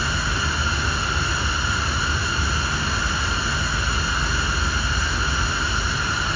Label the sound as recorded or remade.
recorded